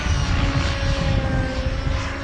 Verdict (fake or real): real